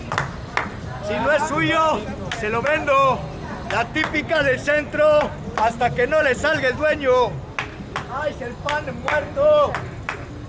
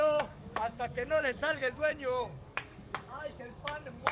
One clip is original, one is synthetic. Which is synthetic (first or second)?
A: second